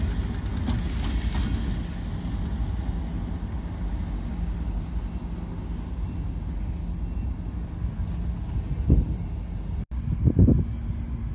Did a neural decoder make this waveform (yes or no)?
no